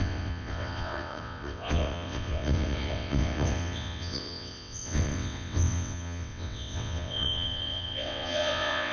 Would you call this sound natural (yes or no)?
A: no